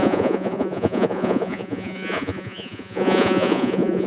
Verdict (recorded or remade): remade